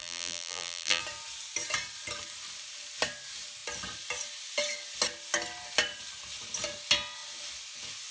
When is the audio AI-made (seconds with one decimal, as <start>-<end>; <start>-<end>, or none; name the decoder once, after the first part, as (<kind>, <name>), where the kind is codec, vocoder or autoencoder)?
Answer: 0.0-1.0 (vocoder, BigVGAN v2)